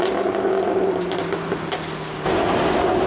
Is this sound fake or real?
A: real